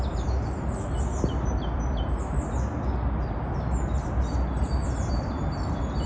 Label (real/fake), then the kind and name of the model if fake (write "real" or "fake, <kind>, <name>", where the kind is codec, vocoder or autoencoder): real